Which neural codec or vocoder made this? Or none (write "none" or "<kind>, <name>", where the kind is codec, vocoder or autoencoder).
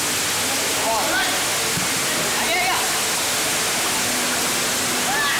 none